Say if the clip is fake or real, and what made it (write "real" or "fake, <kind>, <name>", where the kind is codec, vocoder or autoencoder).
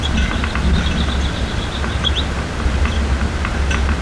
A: real